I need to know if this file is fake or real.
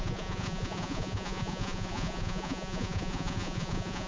fake